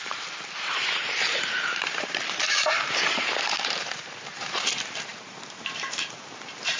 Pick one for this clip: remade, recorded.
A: remade